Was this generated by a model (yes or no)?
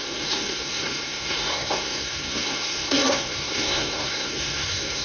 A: yes